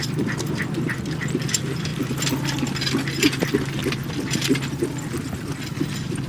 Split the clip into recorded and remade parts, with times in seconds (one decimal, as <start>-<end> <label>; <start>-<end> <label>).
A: 0.0-0.7 remade; 0.7-6.3 recorded